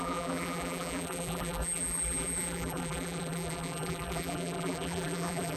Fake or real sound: fake